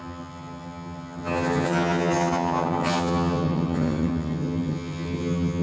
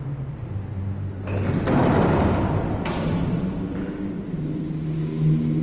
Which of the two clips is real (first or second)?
second